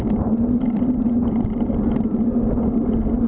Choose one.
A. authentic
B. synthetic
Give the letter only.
A